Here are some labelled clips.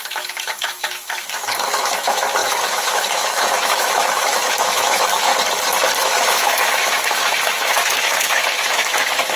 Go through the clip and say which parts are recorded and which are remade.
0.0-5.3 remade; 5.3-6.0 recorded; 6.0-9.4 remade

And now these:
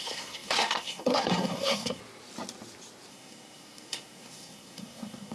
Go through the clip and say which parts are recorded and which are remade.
0.0-2.0 remade; 2.0-3.1 recorded; 3.1-5.3 remade

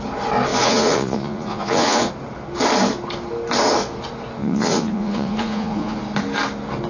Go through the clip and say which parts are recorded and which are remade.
0.0-0.5 recorded; 0.5-2.1 remade; 2.1-4.4 recorded; 4.4-6.0 remade; 6.0-6.9 recorded